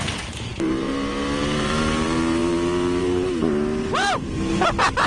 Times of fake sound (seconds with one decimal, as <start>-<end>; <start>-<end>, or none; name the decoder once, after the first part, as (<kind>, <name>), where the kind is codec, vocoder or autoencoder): 0.0-5.1 (vocoder, BigVGAN v2)